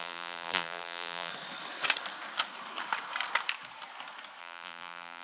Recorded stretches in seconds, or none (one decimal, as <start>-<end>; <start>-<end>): 1.3-4.4